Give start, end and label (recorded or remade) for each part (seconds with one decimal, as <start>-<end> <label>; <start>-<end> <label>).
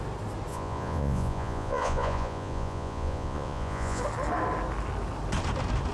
0.0-0.5 recorded; 0.5-4.0 remade; 4.0-5.9 recorded